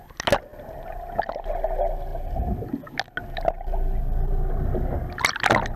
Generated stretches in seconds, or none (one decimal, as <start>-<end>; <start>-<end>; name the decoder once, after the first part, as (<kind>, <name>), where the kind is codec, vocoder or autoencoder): none